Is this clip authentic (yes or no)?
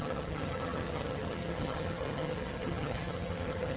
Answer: no